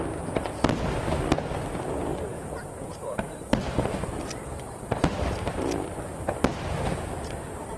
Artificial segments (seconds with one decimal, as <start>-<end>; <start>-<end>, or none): 2.1-5.0; 6.5-7.1